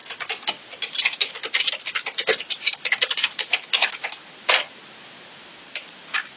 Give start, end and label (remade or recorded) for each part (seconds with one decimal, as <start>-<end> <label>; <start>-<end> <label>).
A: 0.0-6.4 recorded